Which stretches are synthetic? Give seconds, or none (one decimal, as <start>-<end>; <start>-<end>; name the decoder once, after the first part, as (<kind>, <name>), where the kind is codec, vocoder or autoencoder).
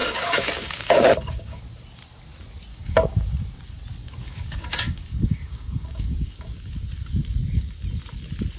0.0-1.6 (codec, DAC); 2.7-3.3; 4.0-6.7